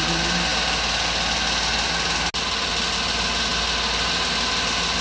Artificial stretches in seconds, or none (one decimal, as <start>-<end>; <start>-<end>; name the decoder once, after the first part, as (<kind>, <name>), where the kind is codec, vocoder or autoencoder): none